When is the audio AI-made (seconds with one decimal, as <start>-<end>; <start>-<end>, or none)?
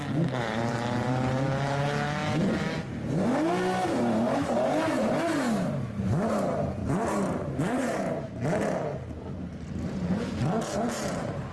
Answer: 6.8-8.2